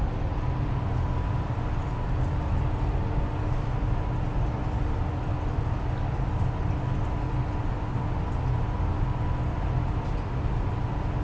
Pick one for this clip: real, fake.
real